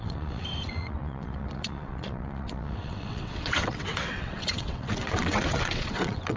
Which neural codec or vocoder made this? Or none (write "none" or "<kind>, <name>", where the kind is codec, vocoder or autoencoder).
vocoder, WaveNeXt